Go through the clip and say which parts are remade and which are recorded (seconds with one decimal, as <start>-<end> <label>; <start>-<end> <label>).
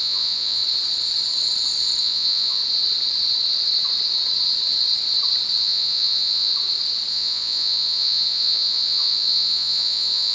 0.0-0.6 remade; 0.6-2.0 recorded; 2.0-2.6 remade; 2.6-5.6 recorded; 5.6-6.5 remade; 6.5-7.1 recorded; 7.1-10.3 remade